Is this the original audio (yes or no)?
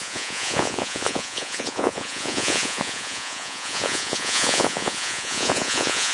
no